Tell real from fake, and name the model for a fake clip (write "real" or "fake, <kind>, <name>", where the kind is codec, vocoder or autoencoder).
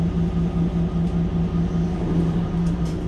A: real